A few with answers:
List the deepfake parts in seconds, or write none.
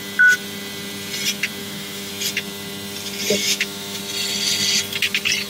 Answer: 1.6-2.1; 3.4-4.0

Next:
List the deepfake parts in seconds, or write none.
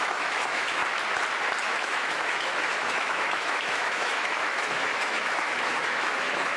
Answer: 0.0-0.8; 1.6-6.6